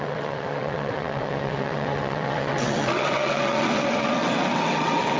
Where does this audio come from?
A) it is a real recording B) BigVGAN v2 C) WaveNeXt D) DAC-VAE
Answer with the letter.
C